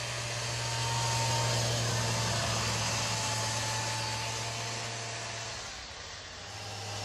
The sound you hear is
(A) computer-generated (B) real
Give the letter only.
B